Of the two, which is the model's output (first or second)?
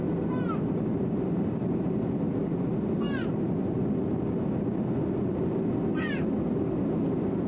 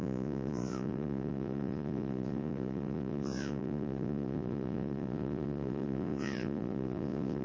second